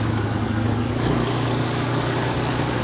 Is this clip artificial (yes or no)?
yes